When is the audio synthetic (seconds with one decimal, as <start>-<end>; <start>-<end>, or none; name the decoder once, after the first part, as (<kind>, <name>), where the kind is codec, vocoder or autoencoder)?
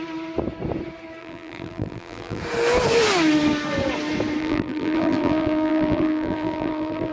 1.2-2.4 (vocoder, BigVGAN v2); 4.4-7.1